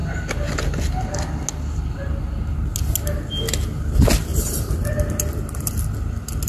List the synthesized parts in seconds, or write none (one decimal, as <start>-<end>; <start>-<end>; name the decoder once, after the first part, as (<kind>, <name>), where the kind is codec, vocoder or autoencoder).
4.3-4.9 (vocoder, BigVGAN v2)